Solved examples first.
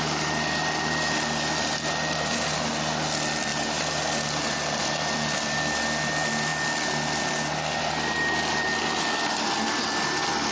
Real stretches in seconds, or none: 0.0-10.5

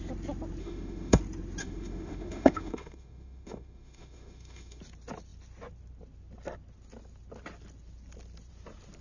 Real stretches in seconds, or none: 0.0-0.6; 1.2-1.6; 4.8-9.0

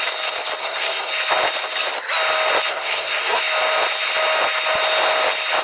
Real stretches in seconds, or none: 0.0-0.6; 1.1-2.7; 3.4-5.6

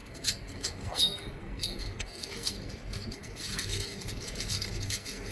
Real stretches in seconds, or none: none

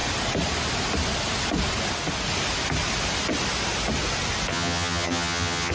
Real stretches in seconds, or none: 0.0-4.5

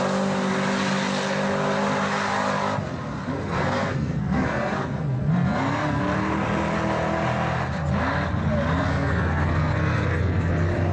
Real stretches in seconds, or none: 0.0-3.3; 6.0-8.8; 10.5-10.9

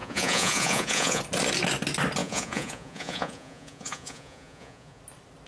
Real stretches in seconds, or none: 1.2-2.2; 5.0-5.5

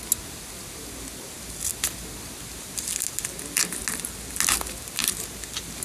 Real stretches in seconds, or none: 0.0-5.8